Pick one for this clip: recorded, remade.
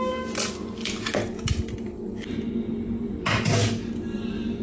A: recorded